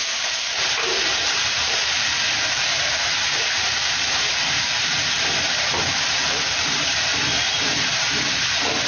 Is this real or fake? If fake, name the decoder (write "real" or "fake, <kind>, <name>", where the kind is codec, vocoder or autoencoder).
fake, vocoder, BigVGAN v2